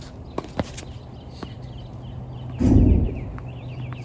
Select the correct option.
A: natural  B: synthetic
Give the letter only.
A